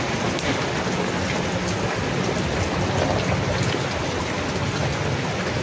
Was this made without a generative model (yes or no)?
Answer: yes